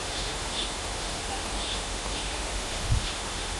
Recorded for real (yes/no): no